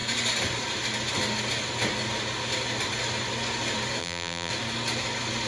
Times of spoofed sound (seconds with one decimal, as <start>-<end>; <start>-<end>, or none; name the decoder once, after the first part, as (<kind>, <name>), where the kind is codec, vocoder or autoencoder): 4.0-4.5 (vocoder, BigVGAN v2)